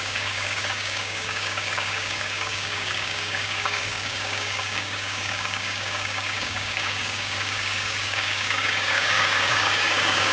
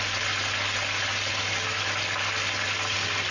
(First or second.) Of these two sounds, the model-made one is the first